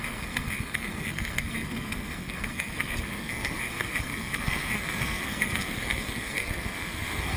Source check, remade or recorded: remade